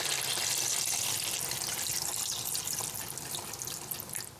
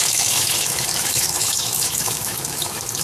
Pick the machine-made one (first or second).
second